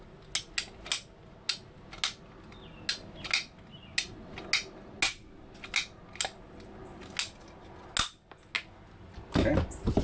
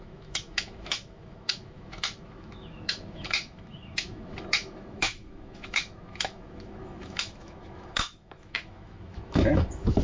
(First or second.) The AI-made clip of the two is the second